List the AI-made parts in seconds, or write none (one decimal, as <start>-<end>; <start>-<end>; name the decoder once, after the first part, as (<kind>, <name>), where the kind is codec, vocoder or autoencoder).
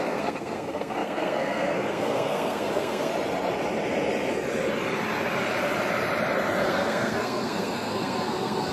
0.0-3.1 (codec, SNAC); 6.6-8.7